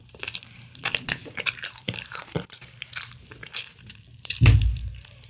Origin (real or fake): fake